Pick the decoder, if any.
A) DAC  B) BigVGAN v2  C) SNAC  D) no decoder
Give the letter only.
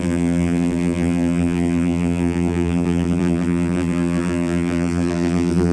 B